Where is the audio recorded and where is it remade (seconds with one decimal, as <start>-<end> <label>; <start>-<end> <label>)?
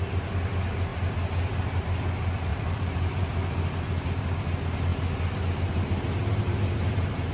0.0-2.5 recorded; 2.5-3.8 remade; 3.8-7.3 recorded